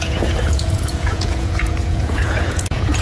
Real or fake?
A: fake